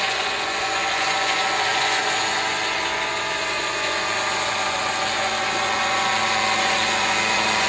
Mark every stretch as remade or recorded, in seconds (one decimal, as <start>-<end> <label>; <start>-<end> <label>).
0.0-7.7 remade